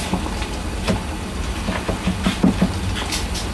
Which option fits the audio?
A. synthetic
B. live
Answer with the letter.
B